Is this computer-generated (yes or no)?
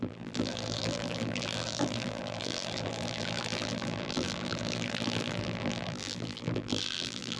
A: yes